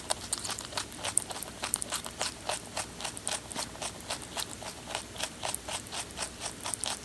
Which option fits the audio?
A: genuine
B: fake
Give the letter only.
A